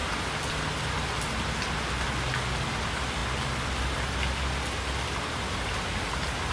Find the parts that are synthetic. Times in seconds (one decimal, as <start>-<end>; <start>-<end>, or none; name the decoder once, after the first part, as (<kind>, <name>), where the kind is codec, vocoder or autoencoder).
none